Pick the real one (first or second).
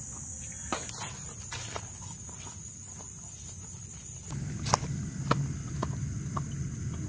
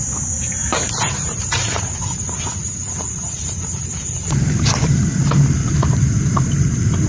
first